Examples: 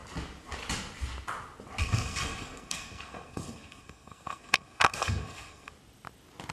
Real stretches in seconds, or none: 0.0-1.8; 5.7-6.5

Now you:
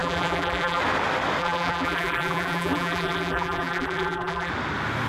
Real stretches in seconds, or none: 0.8-1.4; 4.5-5.1